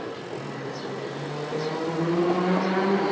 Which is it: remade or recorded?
recorded